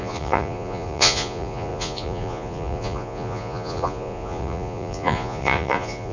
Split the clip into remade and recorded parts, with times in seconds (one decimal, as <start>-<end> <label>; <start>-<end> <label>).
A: 0.0-6.1 remade